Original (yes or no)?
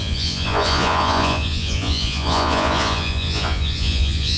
no